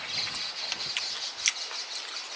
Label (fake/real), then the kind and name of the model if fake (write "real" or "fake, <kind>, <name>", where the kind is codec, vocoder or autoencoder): real